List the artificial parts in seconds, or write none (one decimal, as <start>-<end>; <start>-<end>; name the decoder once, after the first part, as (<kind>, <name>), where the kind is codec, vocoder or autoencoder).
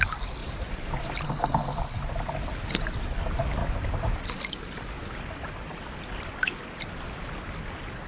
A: 0.4-1.8 (vocoder, BigVGAN v2)